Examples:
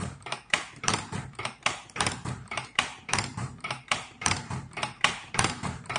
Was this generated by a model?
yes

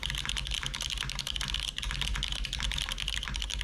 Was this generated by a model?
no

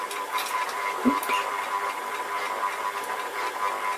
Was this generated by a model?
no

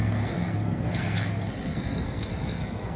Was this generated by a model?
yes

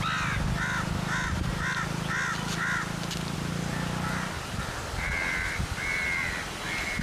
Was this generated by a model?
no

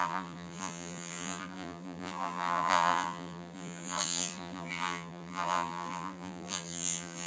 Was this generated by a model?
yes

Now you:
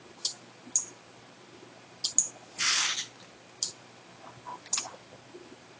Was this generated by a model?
no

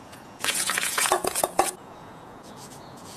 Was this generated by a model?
yes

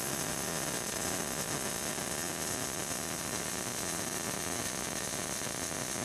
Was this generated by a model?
no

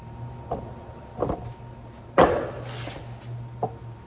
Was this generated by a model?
no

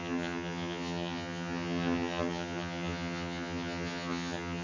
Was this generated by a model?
yes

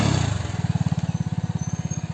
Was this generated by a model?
no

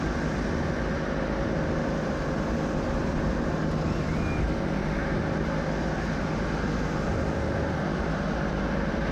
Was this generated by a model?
no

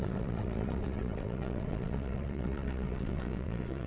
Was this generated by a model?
yes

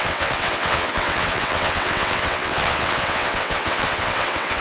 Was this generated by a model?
yes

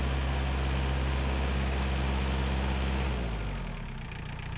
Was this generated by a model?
no